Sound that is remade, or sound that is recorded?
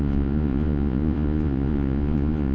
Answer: remade